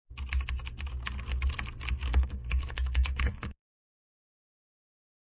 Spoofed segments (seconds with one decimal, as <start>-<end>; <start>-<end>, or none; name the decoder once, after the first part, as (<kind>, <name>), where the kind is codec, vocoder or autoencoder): 2.1-4.4 (codec, SNAC)